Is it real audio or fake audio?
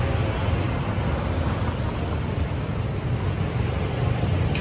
real